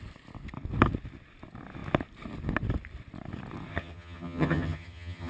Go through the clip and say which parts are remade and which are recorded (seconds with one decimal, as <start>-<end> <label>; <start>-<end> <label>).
0.0-3.7 recorded; 3.7-5.3 remade